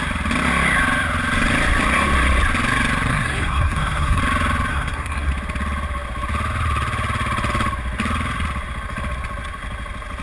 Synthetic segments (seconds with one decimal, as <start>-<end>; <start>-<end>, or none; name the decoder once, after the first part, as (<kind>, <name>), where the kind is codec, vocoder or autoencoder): 3.1-4.2 (codec, SNAC); 4.7-5.3